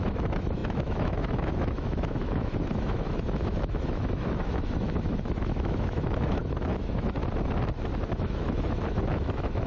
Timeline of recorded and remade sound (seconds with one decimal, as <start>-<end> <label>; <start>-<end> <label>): 0.0-7.2 remade; 7.2-8.2 recorded; 8.2-9.7 remade